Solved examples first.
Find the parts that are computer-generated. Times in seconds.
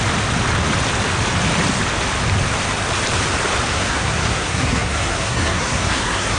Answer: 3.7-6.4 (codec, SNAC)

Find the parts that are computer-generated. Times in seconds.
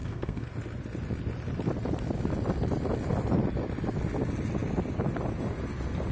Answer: 0.0-0.5 (codec, SNAC)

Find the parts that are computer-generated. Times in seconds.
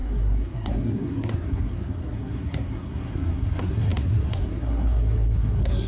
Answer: 0.0-5.9 (codec, SNAC)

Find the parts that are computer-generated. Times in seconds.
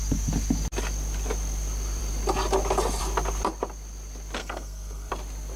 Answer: 4.4-5.1 (codec, SNAC)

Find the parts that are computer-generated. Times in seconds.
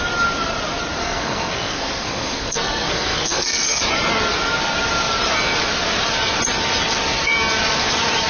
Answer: 1.0-3.8 (codec, SNAC)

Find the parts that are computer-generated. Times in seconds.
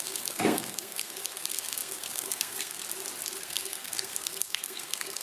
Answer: 0.0-2.8 (codec, SNAC); 3.4-5.2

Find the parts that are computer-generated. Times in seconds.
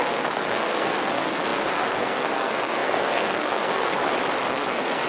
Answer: 0.0-4.0 (codec, SNAC); 4.5-5.1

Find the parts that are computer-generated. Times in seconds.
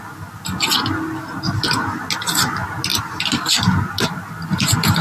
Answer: none